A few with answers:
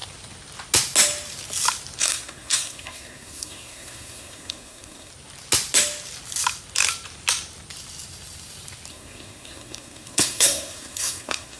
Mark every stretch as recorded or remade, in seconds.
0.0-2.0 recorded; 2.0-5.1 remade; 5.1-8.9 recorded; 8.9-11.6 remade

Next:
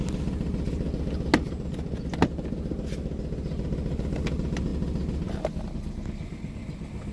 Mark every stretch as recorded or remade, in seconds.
0.0-7.1 recorded